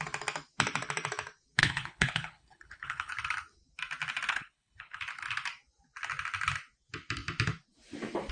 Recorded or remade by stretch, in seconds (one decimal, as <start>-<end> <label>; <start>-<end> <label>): 0.0-1.6 recorded; 1.6-3.1 remade; 3.1-4.3 recorded; 4.3-5.0 remade; 5.0-8.3 recorded